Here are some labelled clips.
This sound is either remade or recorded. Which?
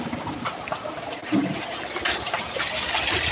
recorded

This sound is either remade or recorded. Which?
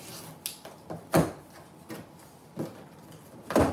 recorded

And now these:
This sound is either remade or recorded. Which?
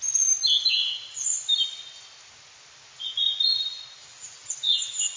recorded